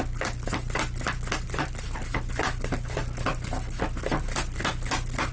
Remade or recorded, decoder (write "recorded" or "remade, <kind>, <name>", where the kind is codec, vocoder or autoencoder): recorded